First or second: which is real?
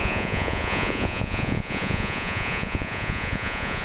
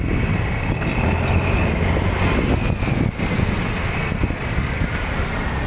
second